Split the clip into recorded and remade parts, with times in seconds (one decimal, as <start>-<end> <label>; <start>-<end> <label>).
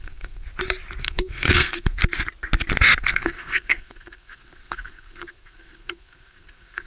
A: 0.0-0.5 remade; 0.5-1.0 recorded; 1.0-2.0 remade; 2.0-3.0 recorded; 3.0-6.9 remade